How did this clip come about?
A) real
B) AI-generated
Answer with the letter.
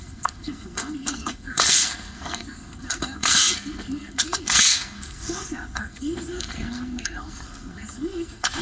B